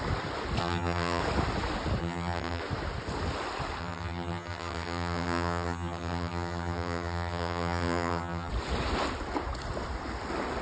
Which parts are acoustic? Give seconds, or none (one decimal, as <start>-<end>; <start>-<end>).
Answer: 0.0-0.6; 1.2-2.0; 2.6-3.8; 8.5-10.6